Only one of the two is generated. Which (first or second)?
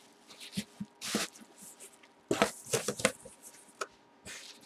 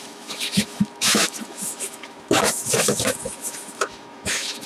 second